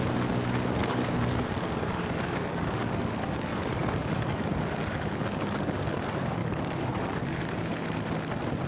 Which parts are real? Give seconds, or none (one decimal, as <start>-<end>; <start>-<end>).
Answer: 0.0-0.8; 6.0-6.4; 7.5-8.7